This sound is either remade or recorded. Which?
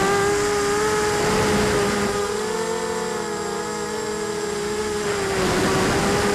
recorded